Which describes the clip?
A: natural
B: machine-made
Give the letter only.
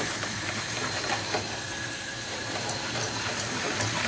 B